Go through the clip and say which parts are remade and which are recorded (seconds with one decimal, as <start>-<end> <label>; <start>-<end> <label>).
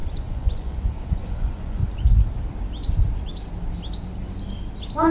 0.0-1.8 remade; 1.8-5.1 recorded